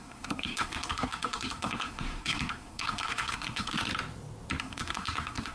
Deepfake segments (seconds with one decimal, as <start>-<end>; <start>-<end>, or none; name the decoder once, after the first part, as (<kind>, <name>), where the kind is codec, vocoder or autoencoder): 0.0-3.9 (codec, SNAC); 4.6-5.5